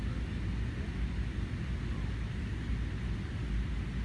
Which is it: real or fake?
real